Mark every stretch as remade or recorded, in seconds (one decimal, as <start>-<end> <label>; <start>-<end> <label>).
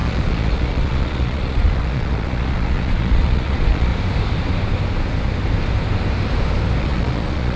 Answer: 0.0-3.9 remade; 3.9-6.8 recorded; 6.8-7.6 remade